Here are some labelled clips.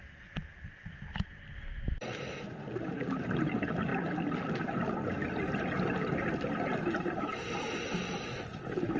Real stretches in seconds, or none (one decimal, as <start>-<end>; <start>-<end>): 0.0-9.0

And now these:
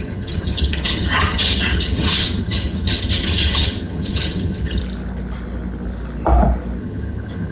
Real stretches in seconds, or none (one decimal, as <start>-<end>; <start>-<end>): 4.8-6.8

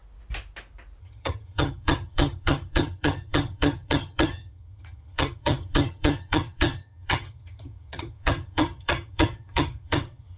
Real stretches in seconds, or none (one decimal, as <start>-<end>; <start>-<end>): 0.0-1.0